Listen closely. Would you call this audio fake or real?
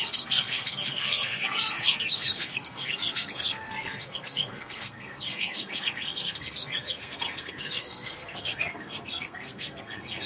fake